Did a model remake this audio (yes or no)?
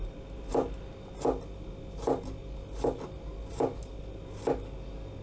no